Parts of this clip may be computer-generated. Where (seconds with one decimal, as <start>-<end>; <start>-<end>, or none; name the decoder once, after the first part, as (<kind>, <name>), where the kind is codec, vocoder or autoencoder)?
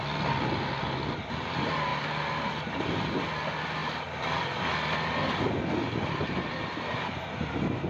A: none